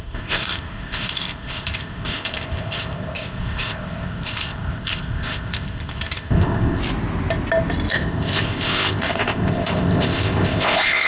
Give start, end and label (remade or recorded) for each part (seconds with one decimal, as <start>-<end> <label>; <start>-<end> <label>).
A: 0.0-6.8 remade; 6.8-7.9 recorded; 7.9-11.1 remade